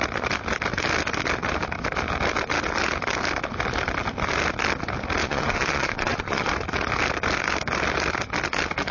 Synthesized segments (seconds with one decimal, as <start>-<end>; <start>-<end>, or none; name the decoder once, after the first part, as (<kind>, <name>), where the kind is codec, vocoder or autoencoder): 5.2-6.5 (vocoder, Vocos)